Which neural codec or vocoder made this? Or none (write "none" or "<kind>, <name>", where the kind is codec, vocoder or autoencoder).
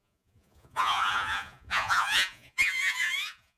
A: vocoder, Vocos